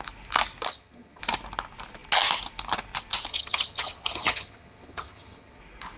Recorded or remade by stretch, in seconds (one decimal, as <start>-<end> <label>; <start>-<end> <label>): 0.0-0.7 recorded; 0.7-1.2 remade; 1.2-3.3 recorded; 3.3-5.6 remade; 5.6-6.0 recorded